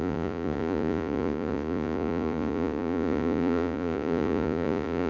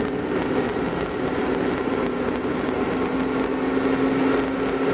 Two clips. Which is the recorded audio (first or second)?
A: second